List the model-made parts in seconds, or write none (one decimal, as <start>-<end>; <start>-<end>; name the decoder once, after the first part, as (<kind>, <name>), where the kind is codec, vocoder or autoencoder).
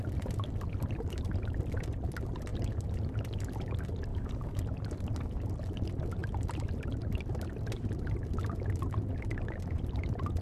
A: 4.1-4.6 (codec, DAC)